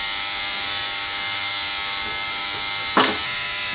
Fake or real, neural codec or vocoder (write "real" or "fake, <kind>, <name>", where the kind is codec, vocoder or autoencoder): fake, autoencoder, DAC-VAE